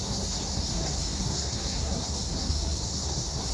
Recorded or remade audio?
remade